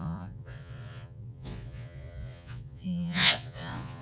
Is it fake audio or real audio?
fake